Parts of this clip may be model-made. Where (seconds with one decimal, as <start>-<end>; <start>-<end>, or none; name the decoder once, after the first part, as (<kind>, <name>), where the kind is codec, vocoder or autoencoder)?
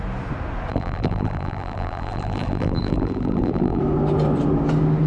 0.7-3.8 (vocoder, BigVGAN v2)